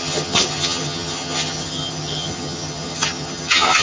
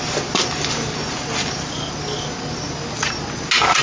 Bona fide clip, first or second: second